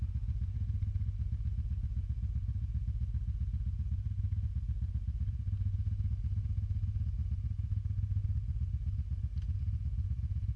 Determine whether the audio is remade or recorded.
recorded